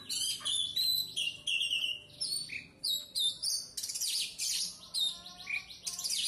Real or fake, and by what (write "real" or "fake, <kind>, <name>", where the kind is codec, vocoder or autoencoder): real